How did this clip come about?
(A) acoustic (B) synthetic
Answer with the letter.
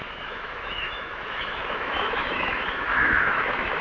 B